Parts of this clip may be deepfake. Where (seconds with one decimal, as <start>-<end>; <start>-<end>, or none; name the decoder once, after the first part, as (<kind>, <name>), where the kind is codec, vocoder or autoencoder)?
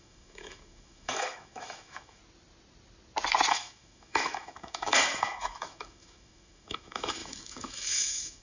0.0-2.2 (autoencoder, DAC-VAE); 3.5-8.4